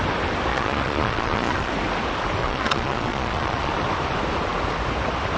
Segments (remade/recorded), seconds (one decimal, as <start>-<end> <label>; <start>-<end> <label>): 0.0-0.5 recorded; 0.5-1.7 remade; 1.7-2.4 recorded; 2.4-3.7 remade; 3.7-5.4 recorded